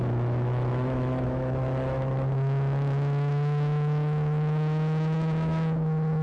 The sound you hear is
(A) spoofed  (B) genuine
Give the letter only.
A